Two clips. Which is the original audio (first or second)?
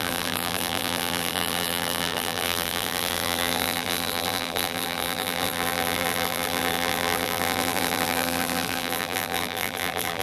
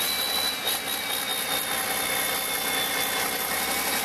second